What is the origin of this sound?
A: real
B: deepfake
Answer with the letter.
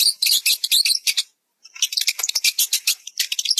A